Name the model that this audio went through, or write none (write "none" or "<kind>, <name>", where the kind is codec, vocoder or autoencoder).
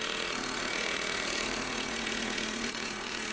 vocoder, Vocos